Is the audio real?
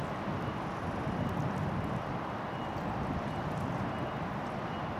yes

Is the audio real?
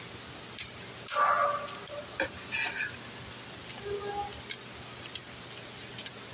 yes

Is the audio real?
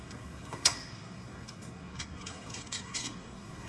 no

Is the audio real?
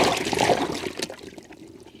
yes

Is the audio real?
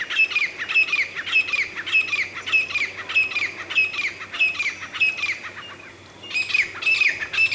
yes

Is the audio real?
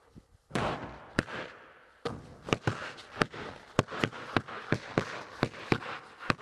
yes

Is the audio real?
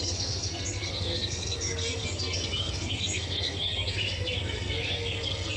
no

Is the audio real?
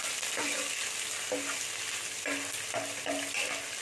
yes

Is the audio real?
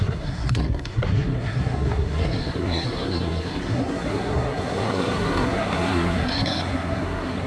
no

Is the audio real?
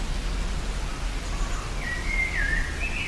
yes